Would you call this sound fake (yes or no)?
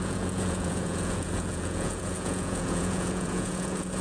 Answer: yes